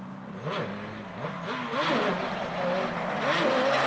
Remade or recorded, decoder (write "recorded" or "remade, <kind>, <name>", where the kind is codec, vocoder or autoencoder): recorded